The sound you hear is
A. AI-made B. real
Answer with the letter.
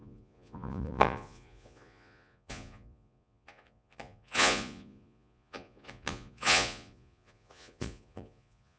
A